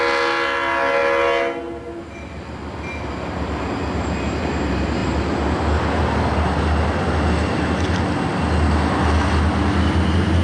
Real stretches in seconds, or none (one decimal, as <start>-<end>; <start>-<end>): 0.0-10.4